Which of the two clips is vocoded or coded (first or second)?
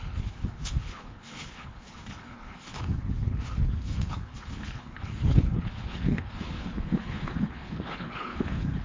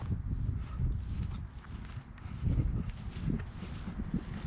first